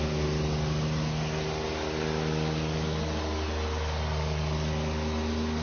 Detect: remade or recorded recorded